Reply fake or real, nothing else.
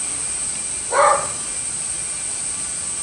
real